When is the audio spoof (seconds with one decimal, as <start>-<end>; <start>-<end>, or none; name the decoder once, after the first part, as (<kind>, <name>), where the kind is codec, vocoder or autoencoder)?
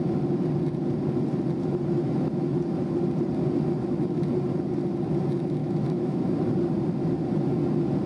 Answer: 5.6-6.2 (autoencoder, DAC-VAE)